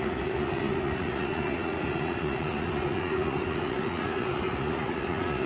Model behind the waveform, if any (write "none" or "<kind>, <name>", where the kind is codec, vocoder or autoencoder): vocoder, Vocos